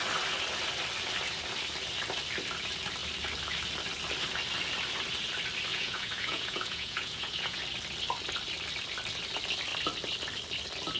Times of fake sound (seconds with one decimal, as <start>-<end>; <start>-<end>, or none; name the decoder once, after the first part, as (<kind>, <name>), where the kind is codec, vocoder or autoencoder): 5.7-7.6 (vocoder, Vocos)